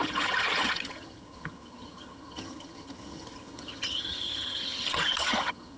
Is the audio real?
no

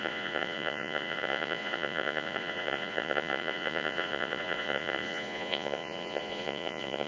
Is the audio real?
no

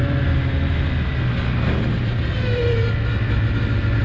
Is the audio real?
yes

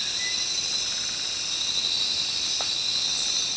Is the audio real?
yes